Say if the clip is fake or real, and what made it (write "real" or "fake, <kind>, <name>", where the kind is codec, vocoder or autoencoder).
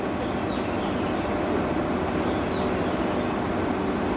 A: real